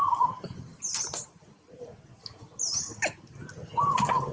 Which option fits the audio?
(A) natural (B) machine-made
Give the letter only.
A